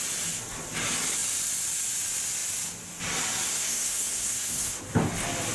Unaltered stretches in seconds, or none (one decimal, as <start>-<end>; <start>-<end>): 0.0-3.5; 4.8-5.5